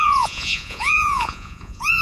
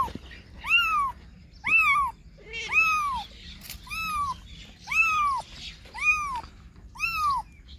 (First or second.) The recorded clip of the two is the second